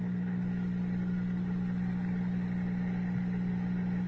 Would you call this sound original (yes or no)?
yes